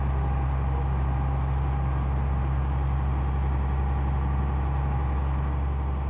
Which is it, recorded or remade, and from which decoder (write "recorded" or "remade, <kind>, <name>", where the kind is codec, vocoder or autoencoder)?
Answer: recorded